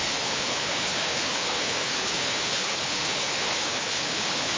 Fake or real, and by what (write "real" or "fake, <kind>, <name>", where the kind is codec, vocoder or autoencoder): fake, codec, HILCodec